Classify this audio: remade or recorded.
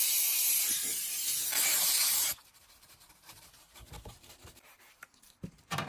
remade